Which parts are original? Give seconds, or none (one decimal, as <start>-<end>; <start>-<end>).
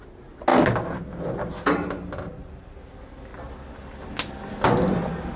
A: 0.0-5.4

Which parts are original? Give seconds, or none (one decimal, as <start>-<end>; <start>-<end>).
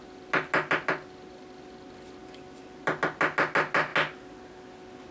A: 0.0-5.1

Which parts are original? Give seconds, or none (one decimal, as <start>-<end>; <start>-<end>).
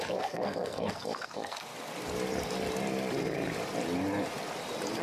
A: 1.7-5.0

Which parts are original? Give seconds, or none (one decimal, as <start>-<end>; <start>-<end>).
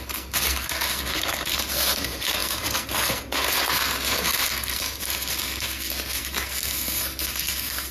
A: none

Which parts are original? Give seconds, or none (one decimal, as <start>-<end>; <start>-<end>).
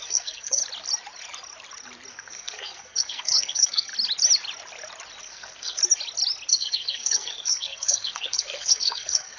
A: 0.6-2.1; 3.9-5.2; 5.8-6.5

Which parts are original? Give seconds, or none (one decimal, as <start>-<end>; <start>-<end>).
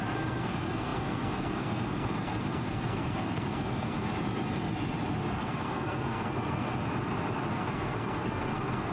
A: 4.1-5.3; 6.7-7.5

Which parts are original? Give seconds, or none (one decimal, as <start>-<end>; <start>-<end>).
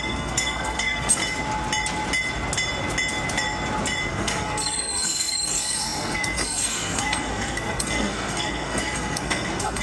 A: 1.2-4.1